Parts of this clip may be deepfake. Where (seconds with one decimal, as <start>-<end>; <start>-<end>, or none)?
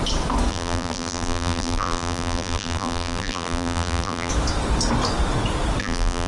0.5-4.3; 5.8-6.3